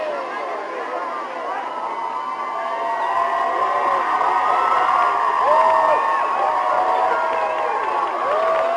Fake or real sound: real